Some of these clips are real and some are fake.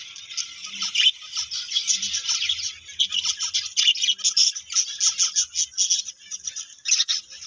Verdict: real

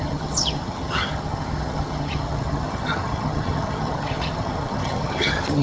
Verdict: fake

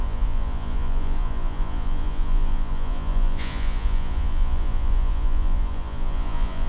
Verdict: fake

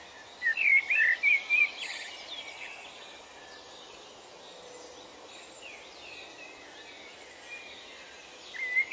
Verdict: real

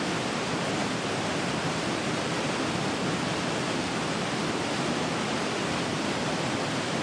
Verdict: real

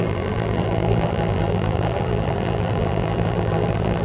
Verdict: fake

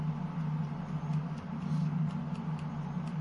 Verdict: real